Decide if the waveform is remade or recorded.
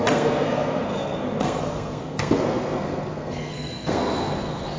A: remade